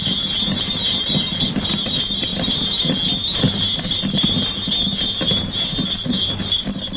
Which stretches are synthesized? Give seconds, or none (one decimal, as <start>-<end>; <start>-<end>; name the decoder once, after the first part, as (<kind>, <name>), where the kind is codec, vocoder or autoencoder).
none